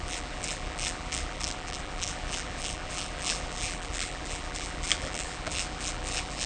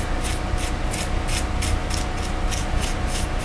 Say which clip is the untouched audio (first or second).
second